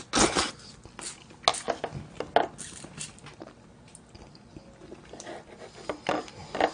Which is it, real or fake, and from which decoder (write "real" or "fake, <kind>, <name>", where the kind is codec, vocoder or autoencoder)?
real